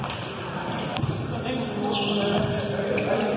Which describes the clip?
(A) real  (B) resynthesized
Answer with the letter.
A